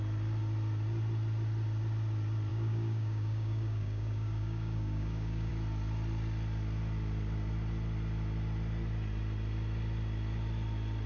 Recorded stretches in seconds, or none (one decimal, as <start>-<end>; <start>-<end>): 0.0-2.5; 5.5-11.1

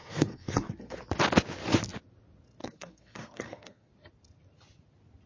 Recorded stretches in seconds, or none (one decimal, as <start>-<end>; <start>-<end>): 1.0-2.6; 3.9-5.3